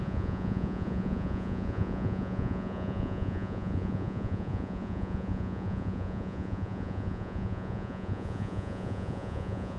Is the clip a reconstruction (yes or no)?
yes